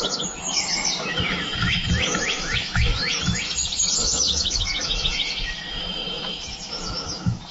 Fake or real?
fake